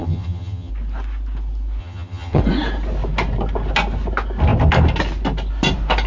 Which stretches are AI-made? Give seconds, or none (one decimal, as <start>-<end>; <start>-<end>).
0.0-0.7; 1.8-2.4